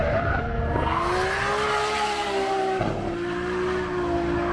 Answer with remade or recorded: recorded